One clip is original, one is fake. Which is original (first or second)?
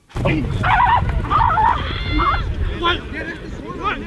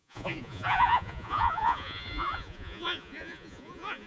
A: first